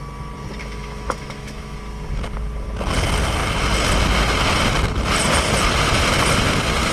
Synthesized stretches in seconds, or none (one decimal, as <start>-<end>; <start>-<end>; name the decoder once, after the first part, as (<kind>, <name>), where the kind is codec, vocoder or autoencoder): 0.6-1.8 (autoencoder, DAC-VAE)